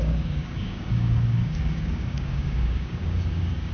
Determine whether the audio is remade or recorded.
remade